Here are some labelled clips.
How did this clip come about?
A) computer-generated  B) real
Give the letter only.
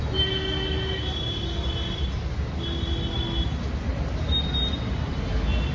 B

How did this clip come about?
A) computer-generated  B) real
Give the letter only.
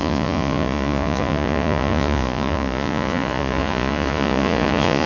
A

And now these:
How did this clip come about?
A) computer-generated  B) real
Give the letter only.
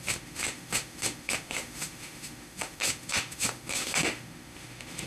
A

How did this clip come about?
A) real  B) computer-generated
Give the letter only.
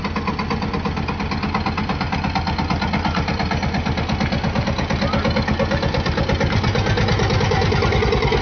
A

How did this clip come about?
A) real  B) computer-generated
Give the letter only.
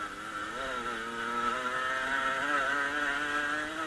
A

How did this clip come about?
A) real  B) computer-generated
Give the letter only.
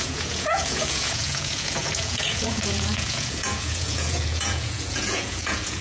B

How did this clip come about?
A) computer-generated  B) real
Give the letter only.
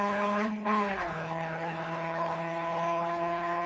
A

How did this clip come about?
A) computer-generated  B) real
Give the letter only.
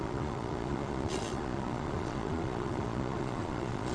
A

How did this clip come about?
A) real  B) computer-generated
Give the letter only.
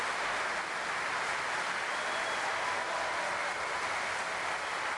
A